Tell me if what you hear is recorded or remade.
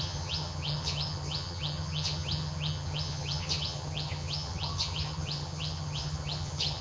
remade